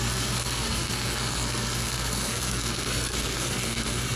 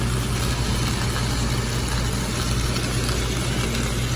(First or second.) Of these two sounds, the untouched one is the second